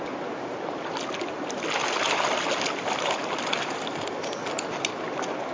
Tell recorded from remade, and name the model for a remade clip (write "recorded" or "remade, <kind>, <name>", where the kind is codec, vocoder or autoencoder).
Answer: recorded